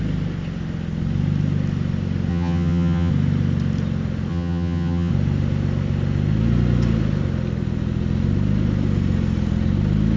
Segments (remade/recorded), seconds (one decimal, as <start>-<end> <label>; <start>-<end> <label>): 0.0-2.3 recorded; 2.3-3.1 remade; 3.1-4.3 recorded; 4.3-5.1 remade; 5.1-10.2 recorded